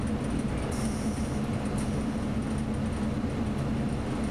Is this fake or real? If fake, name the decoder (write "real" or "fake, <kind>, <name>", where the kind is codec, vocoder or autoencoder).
real